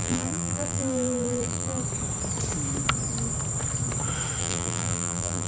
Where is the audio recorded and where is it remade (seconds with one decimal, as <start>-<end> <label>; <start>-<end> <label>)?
0.0-1.8 remade; 1.8-4.4 recorded; 4.4-5.5 remade